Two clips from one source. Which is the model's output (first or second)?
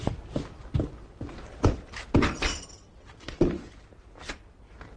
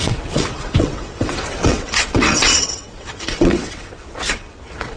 second